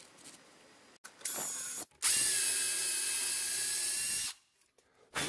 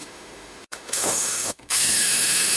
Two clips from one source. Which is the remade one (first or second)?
second